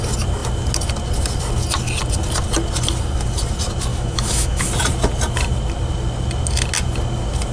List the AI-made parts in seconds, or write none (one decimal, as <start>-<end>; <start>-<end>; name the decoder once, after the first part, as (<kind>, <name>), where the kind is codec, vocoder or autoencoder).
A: 3.9-4.7 (autoencoder, DAC-VAE)